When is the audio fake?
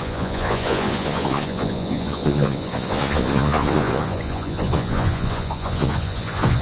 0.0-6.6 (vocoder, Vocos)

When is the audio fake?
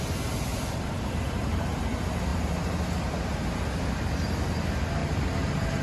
0.5-1.7 (vocoder, BigVGAN v2); 2.3-2.8; 5.0-5.8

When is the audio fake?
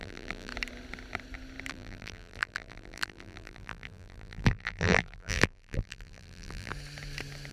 0.0-0.5 (vocoder, BigVGAN v2); 1.7-6.7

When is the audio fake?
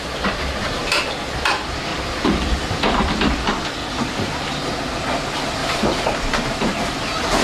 1.9-3.1 (vocoder, BigVGAN v2); 3.8-4.8; 5.6-6.8